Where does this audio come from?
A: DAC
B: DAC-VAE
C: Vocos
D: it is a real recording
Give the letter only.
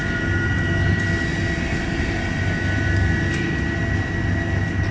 D